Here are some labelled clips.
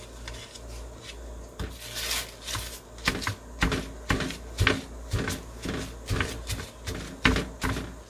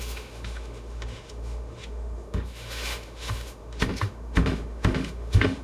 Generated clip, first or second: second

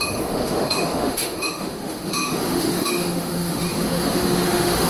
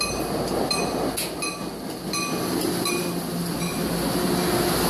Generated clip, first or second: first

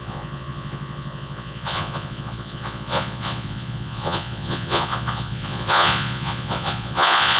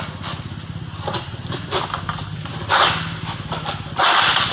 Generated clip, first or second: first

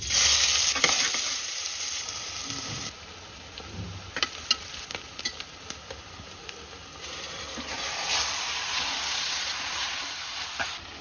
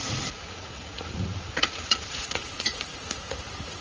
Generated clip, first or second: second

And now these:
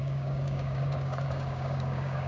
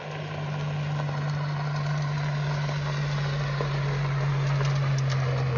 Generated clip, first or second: first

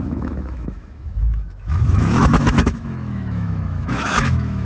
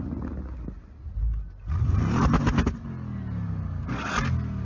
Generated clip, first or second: first